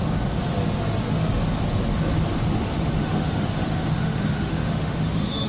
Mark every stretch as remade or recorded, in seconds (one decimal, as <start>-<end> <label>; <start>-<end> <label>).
0.0-2.6 recorded; 2.6-5.5 remade

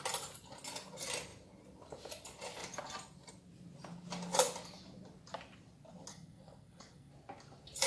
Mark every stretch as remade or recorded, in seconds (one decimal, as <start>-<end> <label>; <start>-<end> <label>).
0.0-6.1 recorded; 6.1-7.1 remade; 7.1-7.9 recorded

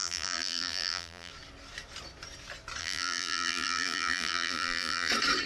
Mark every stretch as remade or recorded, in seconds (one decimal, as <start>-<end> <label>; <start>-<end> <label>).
0.0-1.3 remade; 1.3-2.8 recorded; 2.8-5.1 remade; 5.1-5.5 recorded

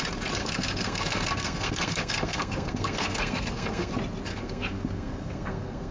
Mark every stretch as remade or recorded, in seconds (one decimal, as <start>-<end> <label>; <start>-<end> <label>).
0.0-0.4 recorded; 0.4-3.9 remade; 3.9-4.3 recorded; 4.3-5.9 remade

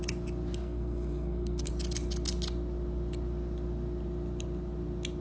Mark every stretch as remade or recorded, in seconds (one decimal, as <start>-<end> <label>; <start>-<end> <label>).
0.0-0.6 recorded; 0.6-1.7 remade; 1.7-5.2 recorded

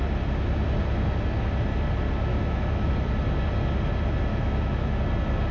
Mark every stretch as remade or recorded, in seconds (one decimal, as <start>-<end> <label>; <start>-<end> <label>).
0.0-2.3 recorded; 2.3-2.9 remade; 2.9-4.3 recorded; 4.3-5.0 remade; 5.0-5.5 recorded

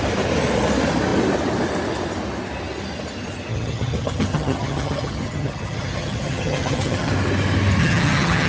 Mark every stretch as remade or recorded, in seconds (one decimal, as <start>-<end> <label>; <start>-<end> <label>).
0.0-3.5 recorded; 3.5-7.1 remade; 7.1-7.8 recorded; 7.8-8.5 remade